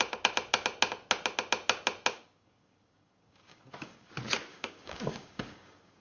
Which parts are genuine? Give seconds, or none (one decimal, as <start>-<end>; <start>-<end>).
0.0-2.1; 4.1-4.5